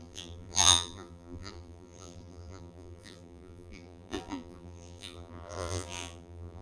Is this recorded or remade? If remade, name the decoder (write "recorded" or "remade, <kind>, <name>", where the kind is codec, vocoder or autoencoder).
remade, vocoder, BigVGAN v2